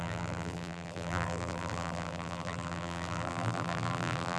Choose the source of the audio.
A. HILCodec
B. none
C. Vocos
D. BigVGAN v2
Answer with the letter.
D